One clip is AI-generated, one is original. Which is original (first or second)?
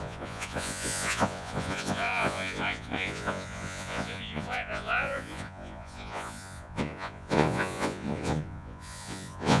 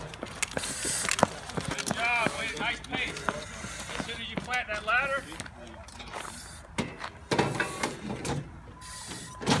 second